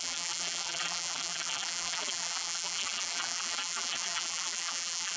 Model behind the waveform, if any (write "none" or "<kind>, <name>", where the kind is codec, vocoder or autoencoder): vocoder, BigVGAN v2